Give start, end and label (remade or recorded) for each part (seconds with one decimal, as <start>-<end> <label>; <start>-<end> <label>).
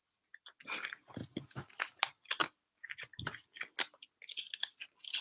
0.0-5.2 recorded